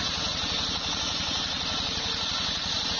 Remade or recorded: recorded